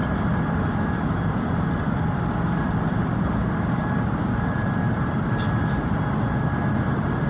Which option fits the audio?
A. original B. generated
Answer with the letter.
B